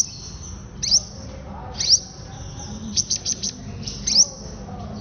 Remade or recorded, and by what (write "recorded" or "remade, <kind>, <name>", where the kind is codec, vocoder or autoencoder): recorded